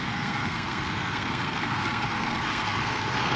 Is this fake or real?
fake